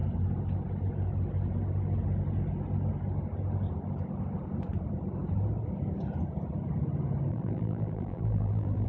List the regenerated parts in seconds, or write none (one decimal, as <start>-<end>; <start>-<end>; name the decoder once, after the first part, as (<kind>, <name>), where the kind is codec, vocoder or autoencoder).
7.3-8.9 (vocoder, BigVGAN v2)